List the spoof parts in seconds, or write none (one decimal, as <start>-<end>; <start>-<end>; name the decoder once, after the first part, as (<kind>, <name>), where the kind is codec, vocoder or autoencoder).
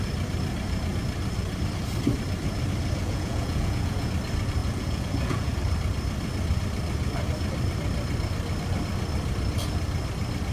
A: 3.0-4.1 (vocoder, Vocos); 4.6-5.6